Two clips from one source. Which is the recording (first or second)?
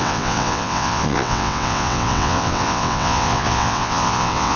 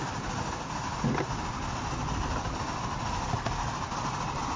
second